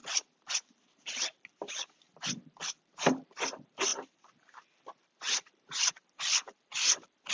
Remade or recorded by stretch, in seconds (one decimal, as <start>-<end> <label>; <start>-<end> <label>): 0.0-7.3 remade